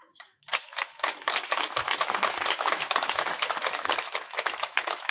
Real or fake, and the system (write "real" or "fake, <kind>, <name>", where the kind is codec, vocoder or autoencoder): fake, autoencoder, DAC-VAE